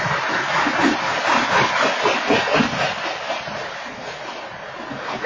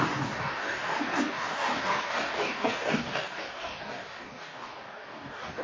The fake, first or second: second